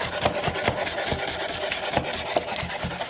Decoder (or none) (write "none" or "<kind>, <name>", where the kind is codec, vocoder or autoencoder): none